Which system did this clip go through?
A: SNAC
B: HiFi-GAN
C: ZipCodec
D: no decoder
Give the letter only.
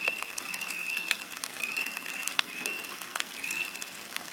A